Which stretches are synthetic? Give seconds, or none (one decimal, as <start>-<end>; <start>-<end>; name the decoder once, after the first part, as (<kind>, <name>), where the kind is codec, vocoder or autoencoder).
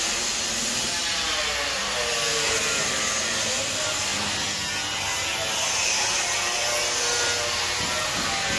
none